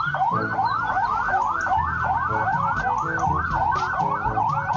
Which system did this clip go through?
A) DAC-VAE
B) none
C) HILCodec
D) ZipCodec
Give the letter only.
B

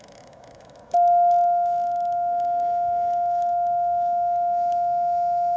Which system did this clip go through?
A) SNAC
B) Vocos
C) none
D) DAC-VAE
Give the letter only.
D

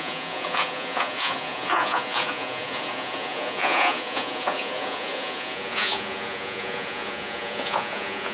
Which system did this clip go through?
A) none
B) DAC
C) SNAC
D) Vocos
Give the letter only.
D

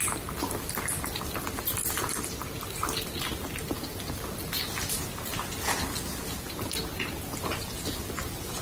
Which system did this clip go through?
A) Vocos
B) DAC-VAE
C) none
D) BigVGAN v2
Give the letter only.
C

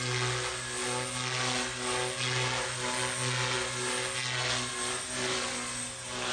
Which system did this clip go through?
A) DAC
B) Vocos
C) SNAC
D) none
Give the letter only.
D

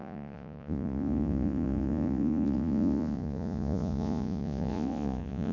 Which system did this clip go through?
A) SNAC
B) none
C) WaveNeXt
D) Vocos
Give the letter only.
D